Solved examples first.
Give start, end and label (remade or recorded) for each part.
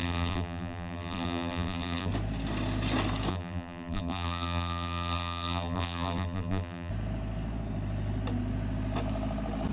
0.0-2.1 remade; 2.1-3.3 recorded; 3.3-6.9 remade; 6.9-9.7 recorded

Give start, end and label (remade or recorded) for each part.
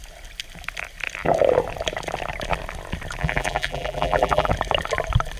0.0-3.2 recorded; 3.2-4.5 remade; 4.5-5.4 recorded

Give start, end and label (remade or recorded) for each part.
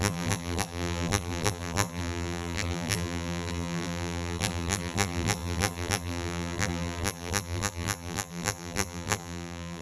0.0-9.8 remade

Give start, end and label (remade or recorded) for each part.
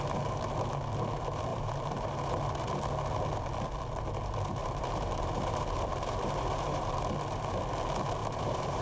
0.0-1.5 recorded; 1.5-2.2 remade; 2.2-4.6 recorded; 4.6-7.1 remade; 7.1-8.2 recorded; 8.2-8.8 remade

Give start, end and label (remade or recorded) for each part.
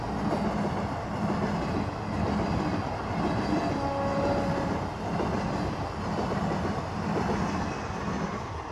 0.0-4.1 recorded; 4.1-4.8 remade; 4.8-8.7 recorded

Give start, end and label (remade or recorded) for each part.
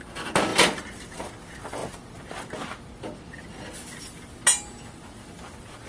0.0-0.5 recorded; 0.5-1.3 remade; 1.3-5.9 recorded